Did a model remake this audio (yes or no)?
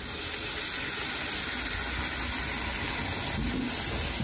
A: no